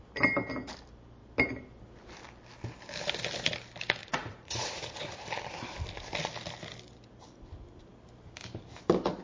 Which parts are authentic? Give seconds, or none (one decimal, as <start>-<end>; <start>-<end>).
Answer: 0.0-4.0; 5.2-9.2